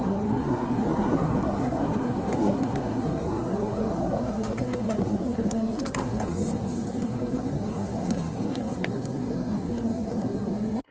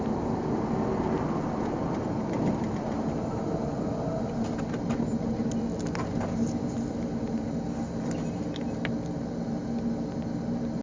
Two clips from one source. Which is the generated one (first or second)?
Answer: first